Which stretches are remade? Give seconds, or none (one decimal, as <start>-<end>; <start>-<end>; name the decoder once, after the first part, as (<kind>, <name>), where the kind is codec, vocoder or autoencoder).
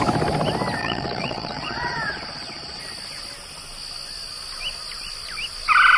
0.8-2.8 (vocoder, Vocos)